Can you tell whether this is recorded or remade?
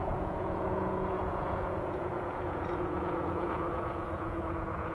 remade